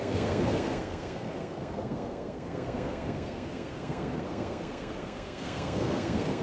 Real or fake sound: fake